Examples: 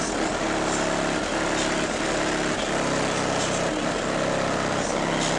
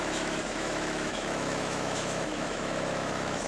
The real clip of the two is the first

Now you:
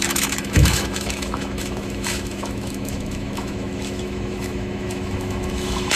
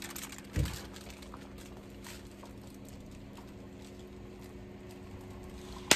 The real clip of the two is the second